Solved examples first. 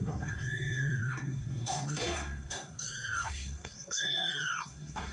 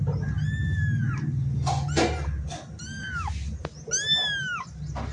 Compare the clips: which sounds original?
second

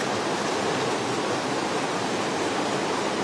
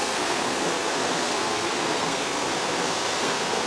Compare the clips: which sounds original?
first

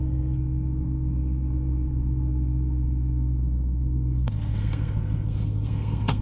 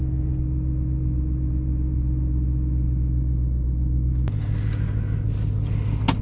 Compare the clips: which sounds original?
second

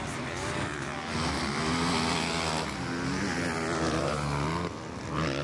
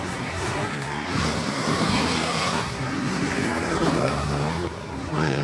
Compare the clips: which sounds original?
first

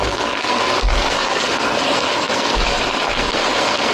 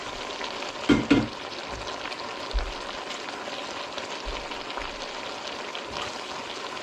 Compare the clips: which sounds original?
second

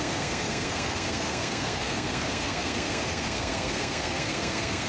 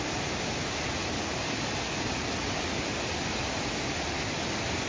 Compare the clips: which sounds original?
second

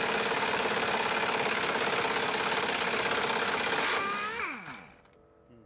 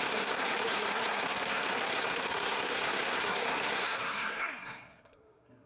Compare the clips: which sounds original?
first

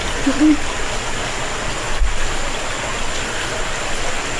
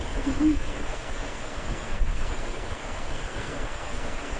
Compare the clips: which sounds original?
first